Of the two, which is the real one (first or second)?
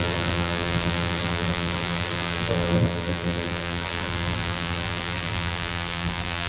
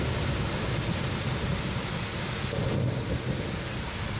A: second